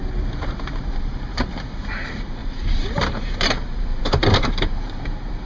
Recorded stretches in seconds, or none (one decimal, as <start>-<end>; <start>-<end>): none